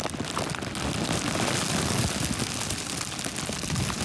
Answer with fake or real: real